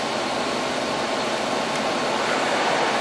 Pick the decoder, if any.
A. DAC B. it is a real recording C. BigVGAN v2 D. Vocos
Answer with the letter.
B